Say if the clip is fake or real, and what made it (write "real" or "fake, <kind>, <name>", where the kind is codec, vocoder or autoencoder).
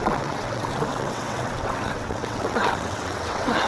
fake, vocoder, WaveNeXt